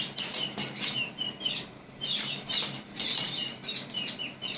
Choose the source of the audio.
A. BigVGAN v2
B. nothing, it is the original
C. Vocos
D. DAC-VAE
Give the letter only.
A